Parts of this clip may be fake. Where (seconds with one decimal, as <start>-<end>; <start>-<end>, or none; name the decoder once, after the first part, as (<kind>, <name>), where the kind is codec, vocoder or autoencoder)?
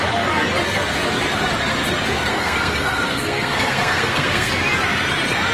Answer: 2.3-4.5 (codec, SNAC)